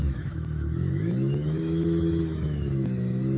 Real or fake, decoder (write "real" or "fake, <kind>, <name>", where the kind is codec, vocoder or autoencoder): fake, autoencoder, DAC-VAE